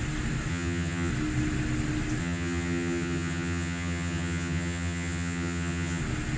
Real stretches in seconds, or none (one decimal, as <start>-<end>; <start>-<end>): 0.0-0.5; 1.1-2.2; 6.0-6.4